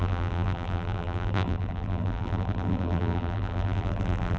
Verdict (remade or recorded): remade